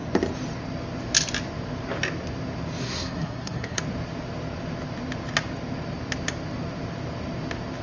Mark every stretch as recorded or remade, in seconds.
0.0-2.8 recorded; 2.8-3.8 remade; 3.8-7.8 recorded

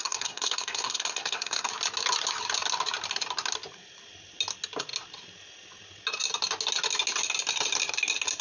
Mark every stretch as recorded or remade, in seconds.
0.0-1.7 remade; 1.7-8.4 recorded

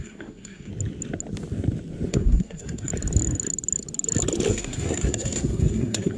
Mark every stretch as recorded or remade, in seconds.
0.0-0.7 remade; 0.7-2.1 recorded; 2.1-2.9 remade; 2.9-4.5 recorded; 4.5-6.2 remade

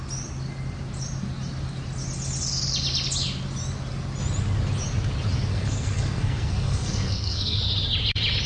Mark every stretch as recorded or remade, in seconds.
0.0-5.5 recorded; 5.5-7.6 remade; 7.6-8.5 recorded

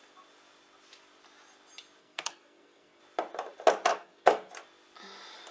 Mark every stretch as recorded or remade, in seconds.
0.0-2.0 recorded; 2.0-3.0 remade; 3.0-3.9 recorded; 3.9-4.5 remade; 4.5-5.5 recorded

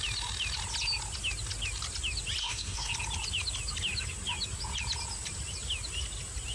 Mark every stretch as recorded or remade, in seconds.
0.0-2.4 recorded; 2.4-2.9 remade; 2.9-6.5 recorded

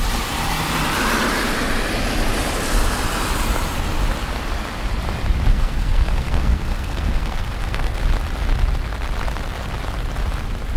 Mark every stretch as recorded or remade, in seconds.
0.0-5.5 recorded; 5.5-8.0 remade; 8.0-10.8 recorded

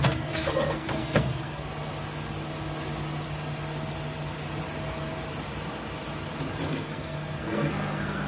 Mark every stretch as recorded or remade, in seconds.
0.0-1.7 remade; 1.7-6.7 recorded; 6.7-8.3 remade